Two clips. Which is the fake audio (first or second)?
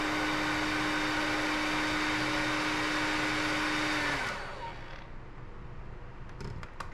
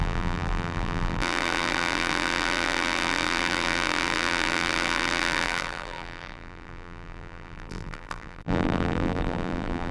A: second